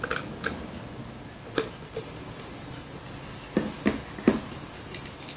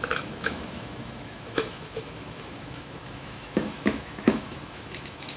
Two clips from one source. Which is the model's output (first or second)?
second